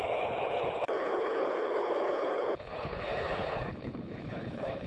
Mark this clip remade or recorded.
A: remade